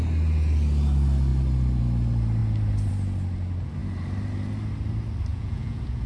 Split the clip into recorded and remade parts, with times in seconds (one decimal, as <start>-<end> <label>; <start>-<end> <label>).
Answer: 0.0-5.3 recorded; 5.3-6.1 remade